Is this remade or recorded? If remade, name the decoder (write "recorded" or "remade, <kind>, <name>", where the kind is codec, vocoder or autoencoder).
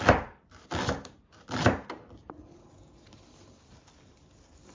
recorded